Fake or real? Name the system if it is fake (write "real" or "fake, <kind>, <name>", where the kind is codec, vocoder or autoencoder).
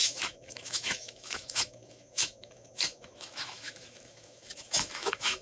fake, autoencoder, DAC-VAE